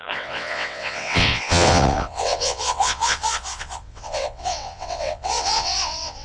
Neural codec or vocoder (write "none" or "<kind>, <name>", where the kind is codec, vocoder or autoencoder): vocoder, WaveNeXt